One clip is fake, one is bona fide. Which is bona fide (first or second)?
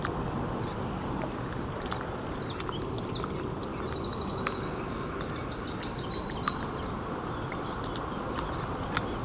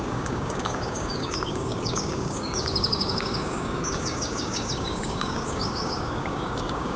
first